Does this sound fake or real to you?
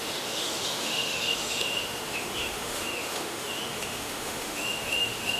fake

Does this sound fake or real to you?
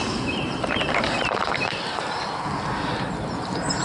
fake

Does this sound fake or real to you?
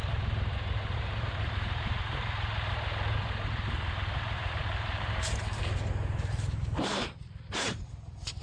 fake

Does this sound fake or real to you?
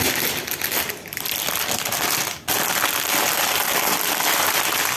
real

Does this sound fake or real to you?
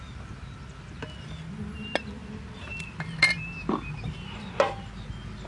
real